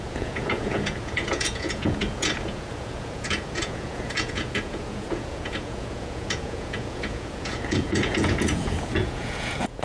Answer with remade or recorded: remade